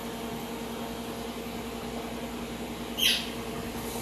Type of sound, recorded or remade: recorded